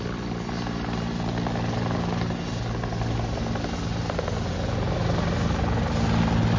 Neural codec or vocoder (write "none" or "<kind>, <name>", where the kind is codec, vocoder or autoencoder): none